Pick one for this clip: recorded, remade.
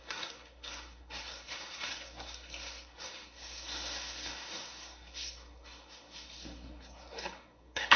remade